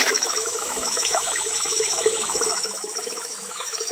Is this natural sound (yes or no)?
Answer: no